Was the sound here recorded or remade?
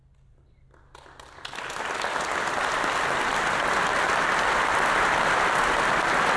recorded